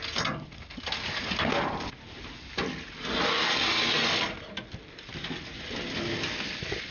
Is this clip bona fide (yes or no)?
yes